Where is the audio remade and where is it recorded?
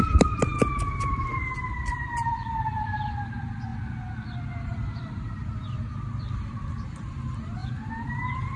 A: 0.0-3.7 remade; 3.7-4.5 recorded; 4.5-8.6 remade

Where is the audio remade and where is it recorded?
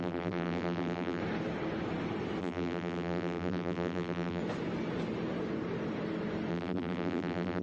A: 0.0-1.2 remade; 1.2-2.4 recorded; 2.4-4.4 remade; 4.4-6.5 recorded; 6.5-7.6 remade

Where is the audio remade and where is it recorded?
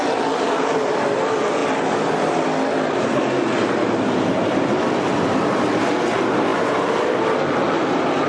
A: 0.0-6.5 recorded; 6.5-7.1 remade; 7.1-8.3 recorded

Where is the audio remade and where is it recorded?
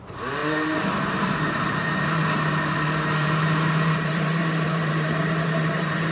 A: 0.0-6.1 remade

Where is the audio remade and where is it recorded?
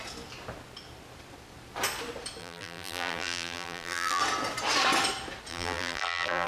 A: 0.0-2.4 recorded; 2.4-4.2 remade; 4.2-5.5 recorded; 5.5-6.5 remade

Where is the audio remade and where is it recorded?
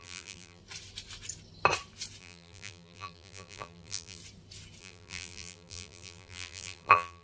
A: 0.0-0.6 remade; 0.6-2.2 recorded; 2.2-4.2 remade; 4.2-4.8 recorded; 4.8-7.2 remade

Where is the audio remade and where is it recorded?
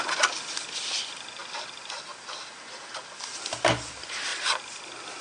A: 0.0-4.3 recorded; 4.3-5.2 remade